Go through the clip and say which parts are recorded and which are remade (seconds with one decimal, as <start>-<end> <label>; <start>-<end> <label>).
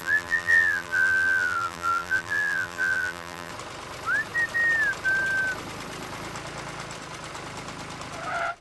0.0-3.5 remade; 3.5-8.6 recorded